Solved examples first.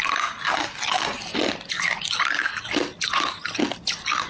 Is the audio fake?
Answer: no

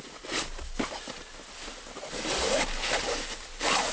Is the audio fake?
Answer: no